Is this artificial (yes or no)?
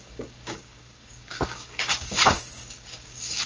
yes